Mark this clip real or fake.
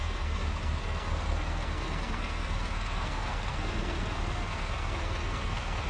fake